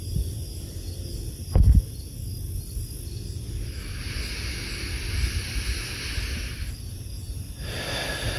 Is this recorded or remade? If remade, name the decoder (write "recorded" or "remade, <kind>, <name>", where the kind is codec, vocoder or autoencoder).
recorded